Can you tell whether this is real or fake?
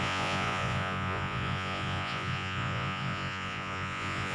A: fake